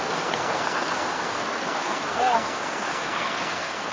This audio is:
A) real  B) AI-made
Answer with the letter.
B